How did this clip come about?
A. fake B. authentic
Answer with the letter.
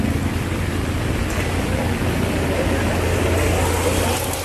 B